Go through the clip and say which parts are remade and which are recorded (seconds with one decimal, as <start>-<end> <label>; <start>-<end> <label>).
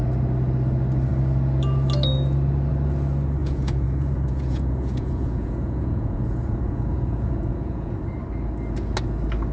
0.0-3.4 recorded; 3.4-7.9 remade; 7.9-9.5 recorded